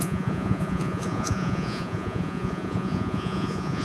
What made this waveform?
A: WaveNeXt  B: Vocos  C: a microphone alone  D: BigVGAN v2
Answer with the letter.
B